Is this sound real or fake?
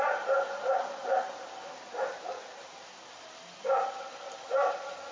real